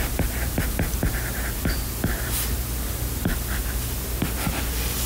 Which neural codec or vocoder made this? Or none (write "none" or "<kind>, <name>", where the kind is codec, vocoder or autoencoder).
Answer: none